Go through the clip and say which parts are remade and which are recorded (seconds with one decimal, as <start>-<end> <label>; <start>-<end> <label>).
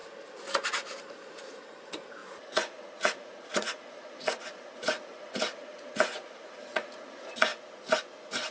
0.0-8.5 remade